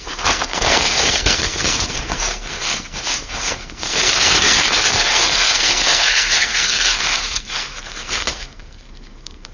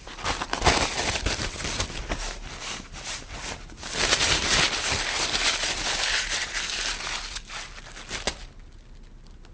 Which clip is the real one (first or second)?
second